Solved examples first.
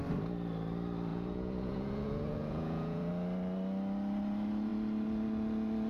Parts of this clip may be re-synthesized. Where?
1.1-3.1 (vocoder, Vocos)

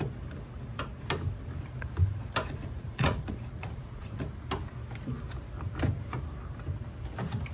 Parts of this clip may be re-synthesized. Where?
2.6-4.2 (vocoder, Vocos)

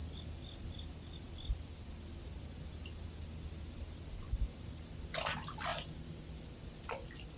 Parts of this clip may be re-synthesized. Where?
none

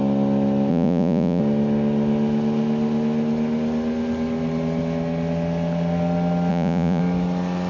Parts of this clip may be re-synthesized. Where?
0.7-1.4 (vocoder, Vocos); 6.5-7.0

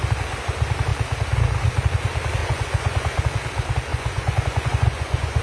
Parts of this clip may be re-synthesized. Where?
2.4-3.2 (vocoder, Vocos); 3.9-5.4

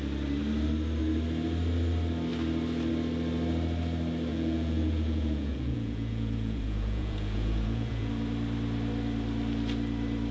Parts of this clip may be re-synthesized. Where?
4.3-8.1 (vocoder, Vocos)

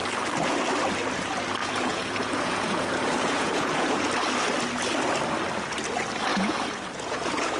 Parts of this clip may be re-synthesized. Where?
1.6-4.1 (vocoder, Vocos); 6.3-7.6

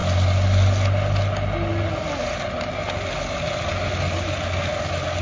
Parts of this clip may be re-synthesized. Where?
none